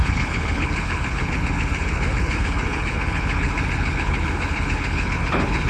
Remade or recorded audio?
remade